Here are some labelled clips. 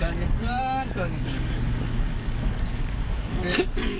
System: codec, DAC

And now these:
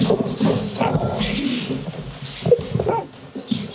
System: none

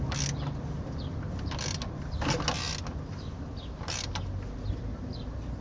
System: none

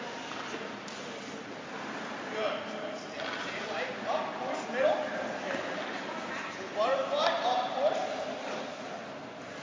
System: none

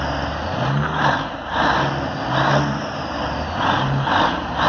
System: none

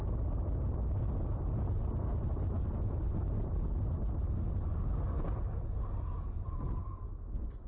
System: none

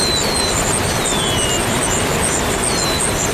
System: none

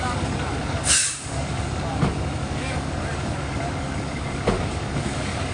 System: codec, DAC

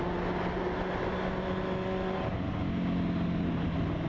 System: none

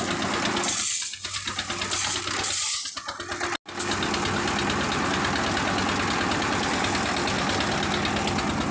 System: none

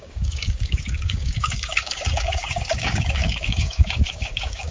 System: codec, DAC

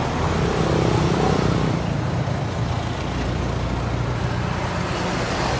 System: none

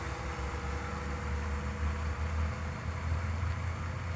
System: none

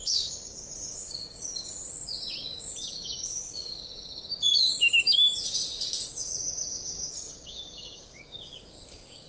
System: codec, DAC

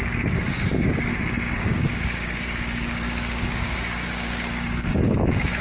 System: codec, DAC